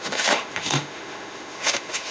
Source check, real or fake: fake